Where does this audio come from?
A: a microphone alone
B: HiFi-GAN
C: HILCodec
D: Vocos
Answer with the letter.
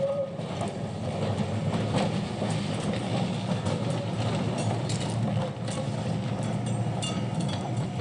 A